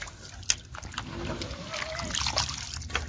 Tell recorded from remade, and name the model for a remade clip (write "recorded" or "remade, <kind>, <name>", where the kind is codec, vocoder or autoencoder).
recorded